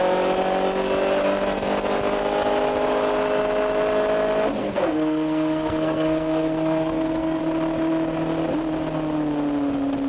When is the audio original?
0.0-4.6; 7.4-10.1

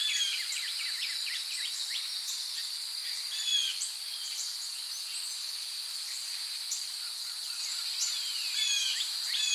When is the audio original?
0.0-9.5

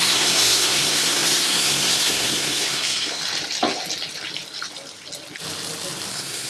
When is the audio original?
3.2-6.1

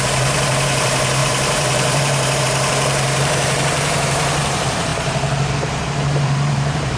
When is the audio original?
none

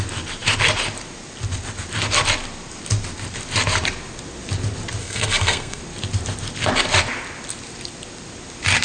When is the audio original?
0.0-5.0; 5.8-8.8

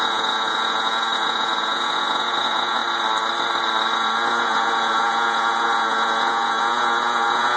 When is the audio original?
2.8-3.9